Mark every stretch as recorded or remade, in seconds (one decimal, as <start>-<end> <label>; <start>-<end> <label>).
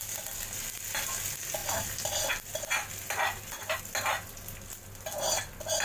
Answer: 0.0-5.8 recorded